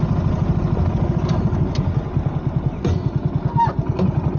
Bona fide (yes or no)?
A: yes